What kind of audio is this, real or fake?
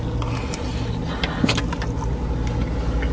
real